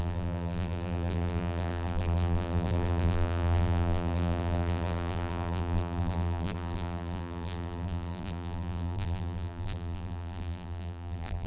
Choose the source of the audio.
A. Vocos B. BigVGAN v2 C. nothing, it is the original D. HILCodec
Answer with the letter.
B